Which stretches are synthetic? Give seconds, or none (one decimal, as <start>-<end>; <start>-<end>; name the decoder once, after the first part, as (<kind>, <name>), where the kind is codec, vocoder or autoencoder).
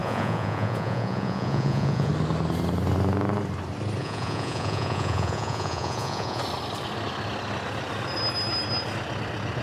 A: 0.0-2.1 (vocoder, Vocos); 4.0-6.4